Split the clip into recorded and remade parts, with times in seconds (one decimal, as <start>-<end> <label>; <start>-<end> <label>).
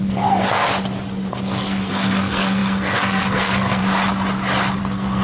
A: 0.0-0.6 remade; 0.6-1.3 recorded; 1.3-3.8 remade; 3.8-4.8 recorded; 4.8-5.2 remade